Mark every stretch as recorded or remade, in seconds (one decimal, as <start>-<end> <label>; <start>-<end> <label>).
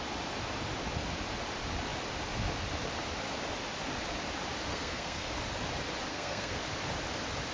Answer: 0.0-4.7 recorded; 4.7-5.3 remade; 5.3-6.1 recorded; 6.1-6.6 remade; 6.6-7.5 recorded